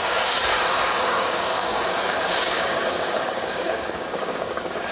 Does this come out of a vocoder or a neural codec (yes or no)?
yes